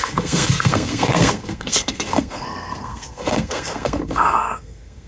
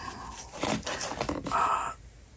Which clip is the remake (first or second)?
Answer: first